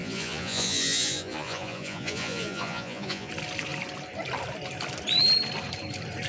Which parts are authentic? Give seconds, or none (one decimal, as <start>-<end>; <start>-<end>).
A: 3.3-6.3

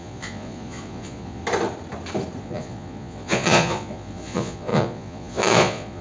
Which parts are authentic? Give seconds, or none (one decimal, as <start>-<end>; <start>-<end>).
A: 1.4-2.4

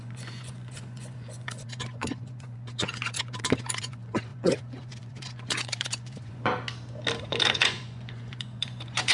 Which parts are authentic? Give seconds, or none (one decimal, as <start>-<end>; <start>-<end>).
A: 6.5-7.2

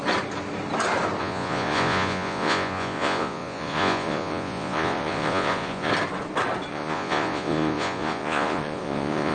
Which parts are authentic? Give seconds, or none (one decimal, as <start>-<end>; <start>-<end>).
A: 0.0-1.2; 5.9-6.7

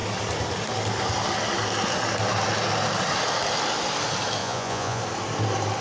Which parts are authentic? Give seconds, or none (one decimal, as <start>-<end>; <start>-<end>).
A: 0.0-4.4; 5.0-5.8